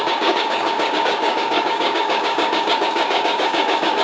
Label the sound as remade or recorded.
remade